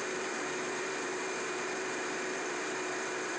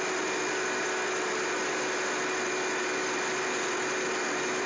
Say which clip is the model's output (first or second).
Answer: first